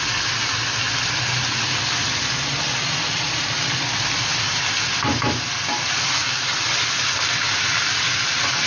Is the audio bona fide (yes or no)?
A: yes